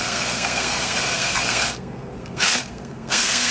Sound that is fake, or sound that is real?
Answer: fake